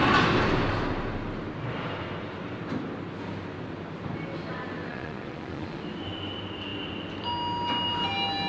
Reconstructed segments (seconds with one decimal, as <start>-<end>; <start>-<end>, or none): 4.9-5.8